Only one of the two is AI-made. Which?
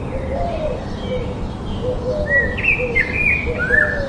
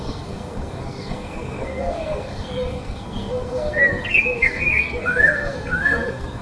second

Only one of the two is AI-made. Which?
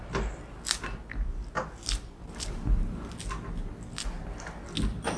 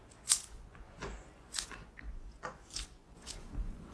second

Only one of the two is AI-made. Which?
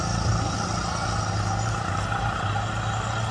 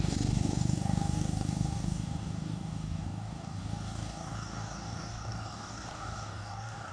second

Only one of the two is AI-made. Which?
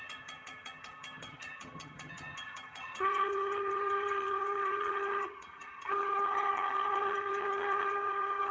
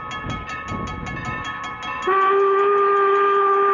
first